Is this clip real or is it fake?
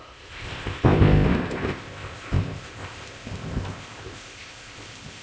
fake